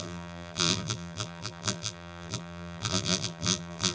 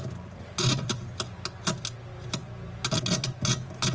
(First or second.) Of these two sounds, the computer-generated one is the first